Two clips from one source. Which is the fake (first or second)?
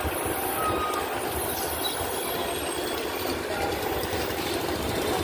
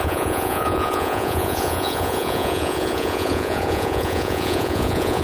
second